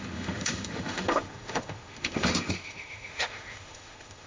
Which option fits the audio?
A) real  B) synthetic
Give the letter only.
B